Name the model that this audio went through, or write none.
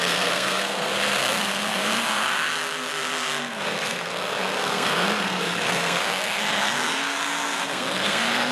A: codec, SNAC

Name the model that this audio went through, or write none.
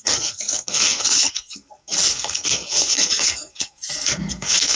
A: codec, SNAC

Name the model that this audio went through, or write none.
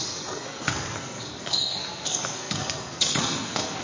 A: codec, SNAC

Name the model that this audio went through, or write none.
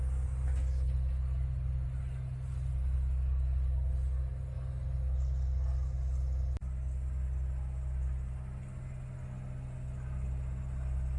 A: none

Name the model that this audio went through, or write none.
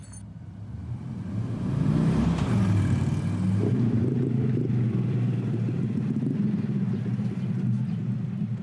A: none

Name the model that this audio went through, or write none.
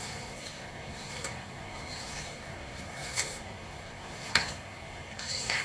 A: codec, SNAC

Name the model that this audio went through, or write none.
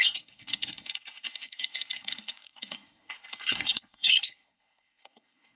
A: codec, SNAC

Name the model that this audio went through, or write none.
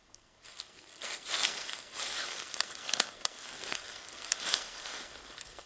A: codec, SNAC